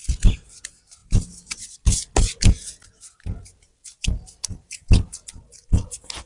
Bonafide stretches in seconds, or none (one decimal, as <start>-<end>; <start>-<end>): 0.0-6.3